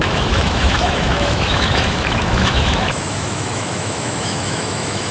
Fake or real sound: fake